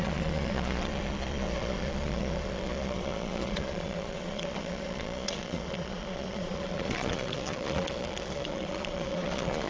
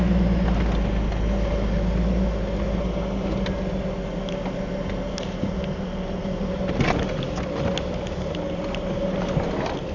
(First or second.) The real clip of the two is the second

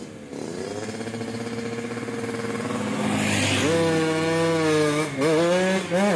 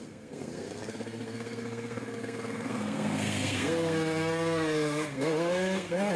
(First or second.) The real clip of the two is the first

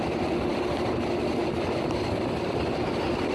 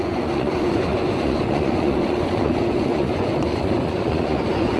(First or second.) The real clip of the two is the first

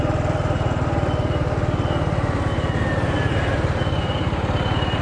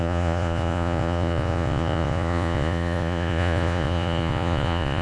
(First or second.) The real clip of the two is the first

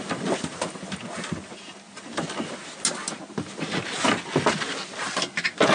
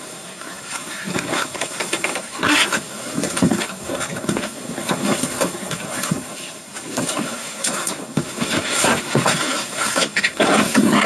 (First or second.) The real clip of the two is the first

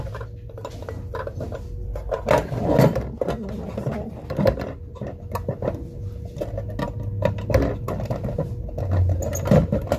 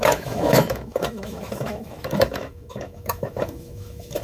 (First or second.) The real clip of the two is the first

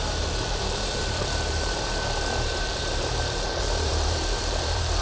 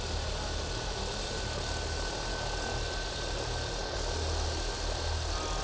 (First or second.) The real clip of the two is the second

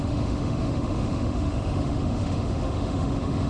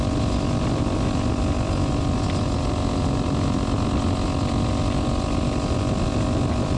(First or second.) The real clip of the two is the second